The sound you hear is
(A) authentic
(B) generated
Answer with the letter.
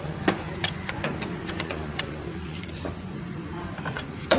B